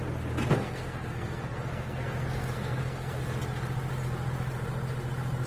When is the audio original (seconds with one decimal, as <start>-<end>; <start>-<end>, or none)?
0.0-0.4; 3.2-5.5